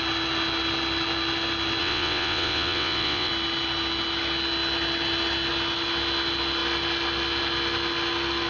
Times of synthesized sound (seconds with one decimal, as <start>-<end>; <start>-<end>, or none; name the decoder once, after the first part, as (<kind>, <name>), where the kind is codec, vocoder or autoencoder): 1.8-3.3 (vocoder, WaveNeXt)